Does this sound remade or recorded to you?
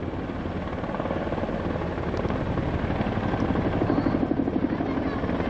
recorded